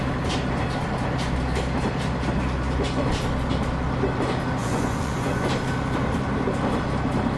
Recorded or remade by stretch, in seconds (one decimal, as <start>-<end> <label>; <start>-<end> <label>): 0.0-4.6 recorded; 4.6-5.5 remade; 5.5-7.4 recorded